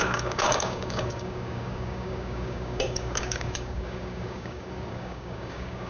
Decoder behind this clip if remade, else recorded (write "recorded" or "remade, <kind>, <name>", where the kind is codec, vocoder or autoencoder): remade, codec, DAC